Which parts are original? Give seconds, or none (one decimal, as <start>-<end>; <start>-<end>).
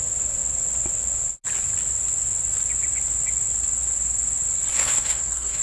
0.0-4.7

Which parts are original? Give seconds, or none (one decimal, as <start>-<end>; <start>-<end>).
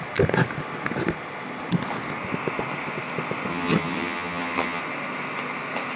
0.0-3.5; 4.8-6.0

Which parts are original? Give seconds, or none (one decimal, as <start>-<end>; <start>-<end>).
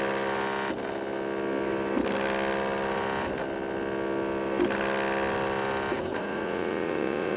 0.0-5.9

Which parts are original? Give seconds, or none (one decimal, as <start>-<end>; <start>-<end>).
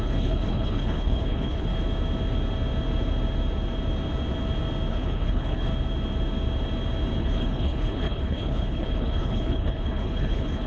1.7-4.9; 5.7-7.2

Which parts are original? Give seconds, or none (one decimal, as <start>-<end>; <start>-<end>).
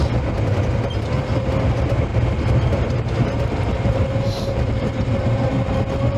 0.0-2.1; 5.8-6.2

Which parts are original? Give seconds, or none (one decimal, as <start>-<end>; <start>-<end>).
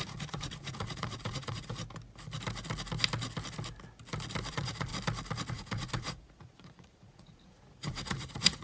1.8-4.5; 4.9-5.5